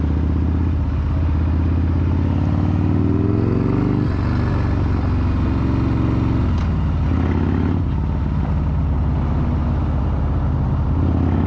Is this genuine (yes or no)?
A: yes